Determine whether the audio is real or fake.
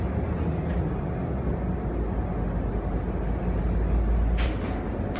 real